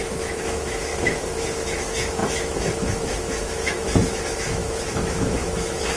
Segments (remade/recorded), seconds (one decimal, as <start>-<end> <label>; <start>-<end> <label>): 0.0-6.0 remade

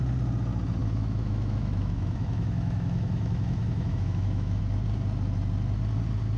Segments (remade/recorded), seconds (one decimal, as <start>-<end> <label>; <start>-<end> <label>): 0.0-0.8 recorded; 0.8-4.6 remade; 4.6-6.4 recorded

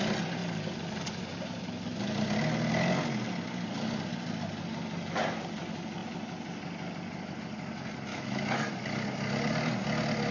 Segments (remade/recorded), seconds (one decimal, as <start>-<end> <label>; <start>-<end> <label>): 0.0-8.1 recorded; 8.1-8.7 remade; 8.7-10.3 recorded